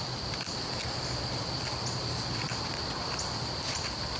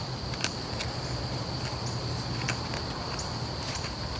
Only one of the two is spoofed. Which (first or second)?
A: first